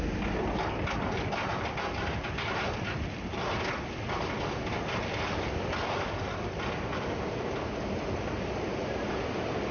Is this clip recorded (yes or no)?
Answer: yes